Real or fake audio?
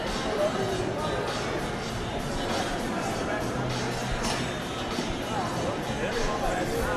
real